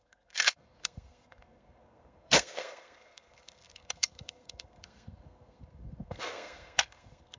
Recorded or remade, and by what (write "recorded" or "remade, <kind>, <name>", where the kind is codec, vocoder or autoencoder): remade, codec, SNAC